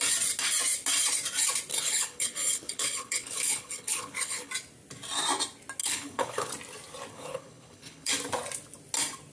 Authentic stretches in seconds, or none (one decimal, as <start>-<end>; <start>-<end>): 0.0-1.7; 4.5-5.8; 6.5-7.1; 8.1-9.3